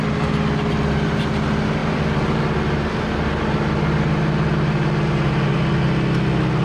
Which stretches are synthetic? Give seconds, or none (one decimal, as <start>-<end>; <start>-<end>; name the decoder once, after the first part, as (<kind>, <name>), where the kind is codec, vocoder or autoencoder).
none